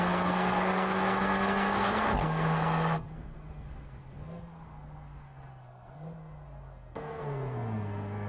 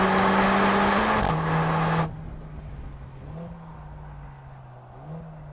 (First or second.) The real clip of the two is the second